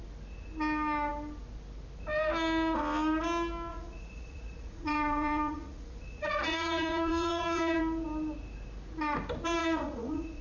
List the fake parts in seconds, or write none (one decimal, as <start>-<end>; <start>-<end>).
3.7-7.8; 9.6-10.4